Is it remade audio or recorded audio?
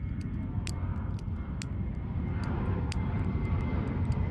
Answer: recorded